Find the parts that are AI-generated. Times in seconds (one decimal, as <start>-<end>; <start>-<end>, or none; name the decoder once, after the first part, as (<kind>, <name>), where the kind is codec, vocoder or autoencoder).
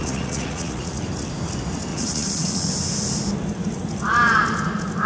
0.0-1.0 (vocoder, Vocos); 1.9-2.7